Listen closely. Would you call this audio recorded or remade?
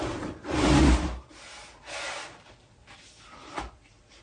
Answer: recorded